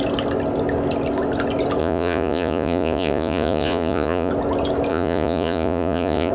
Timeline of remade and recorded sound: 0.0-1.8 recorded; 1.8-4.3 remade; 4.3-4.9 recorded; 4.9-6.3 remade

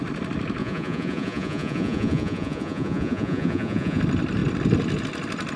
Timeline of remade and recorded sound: 0.0-0.6 recorded; 0.6-4.0 remade; 4.0-5.6 recorded

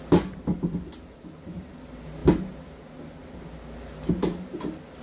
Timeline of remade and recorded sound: 0.0-5.0 recorded